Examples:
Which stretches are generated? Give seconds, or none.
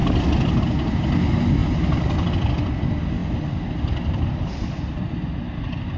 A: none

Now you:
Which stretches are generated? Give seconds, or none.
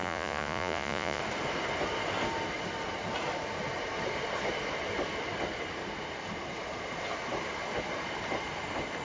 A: 0.0-1.2 (vocoder, Vocos)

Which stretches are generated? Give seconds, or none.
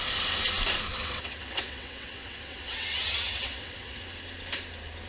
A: 0.9-4.0 (vocoder, WaveNeXt)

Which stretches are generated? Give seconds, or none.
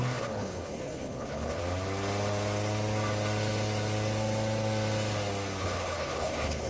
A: 0.0-1.6 (codec, HILCodec); 5.6-6.7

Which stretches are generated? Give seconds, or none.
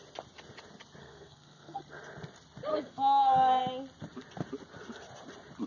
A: 1.0-1.8 (codec, SNAC); 2.7-3.6